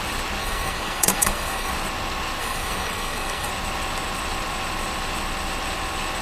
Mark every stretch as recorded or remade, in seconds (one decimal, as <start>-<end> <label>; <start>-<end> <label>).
0.0-0.4 recorded; 0.4-1.7 remade; 1.7-2.4 recorded; 2.4-3.5 remade; 3.5-6.2 recorded